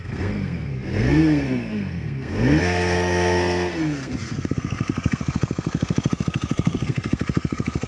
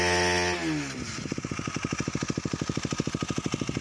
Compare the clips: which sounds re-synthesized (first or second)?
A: first